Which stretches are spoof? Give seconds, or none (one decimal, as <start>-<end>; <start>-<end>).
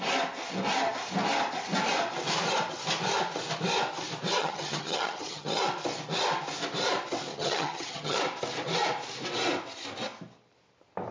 4.4-5.6; 7.3-8.2